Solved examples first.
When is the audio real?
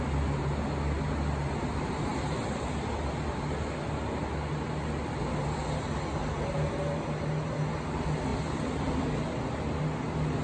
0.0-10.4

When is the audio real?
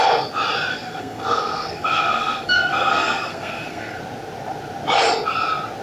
0.0-0.7; 4.0-5.8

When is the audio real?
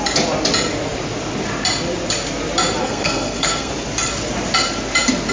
0.0-2.8; 3.7-5.3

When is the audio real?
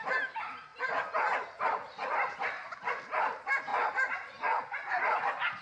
0.0-5.6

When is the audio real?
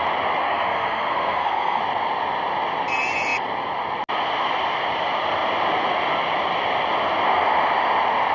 0.0-0.4; 1.8-8.3